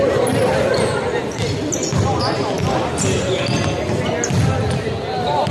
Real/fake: real